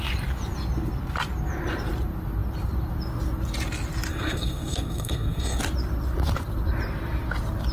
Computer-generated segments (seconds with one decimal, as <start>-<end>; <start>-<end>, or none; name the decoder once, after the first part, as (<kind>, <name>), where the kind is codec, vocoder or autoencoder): 4.1-5.6 (codec, SNAC)